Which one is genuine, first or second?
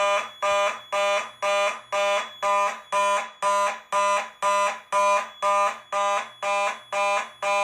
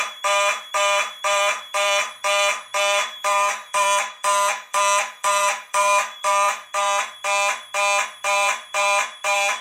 first